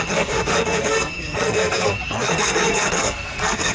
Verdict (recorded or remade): remade